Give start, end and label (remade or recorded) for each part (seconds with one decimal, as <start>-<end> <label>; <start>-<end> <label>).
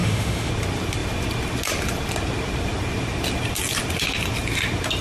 0.0-0.5 remade; 0.5-5.0 recorded